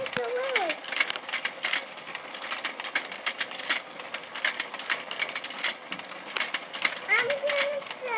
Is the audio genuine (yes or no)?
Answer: no